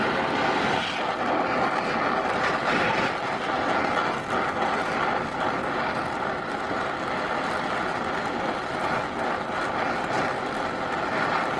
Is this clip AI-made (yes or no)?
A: no